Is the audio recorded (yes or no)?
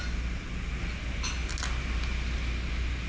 yes